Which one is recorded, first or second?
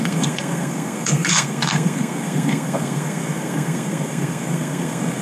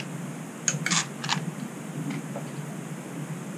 second